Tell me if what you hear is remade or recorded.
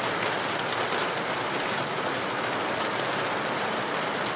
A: recorded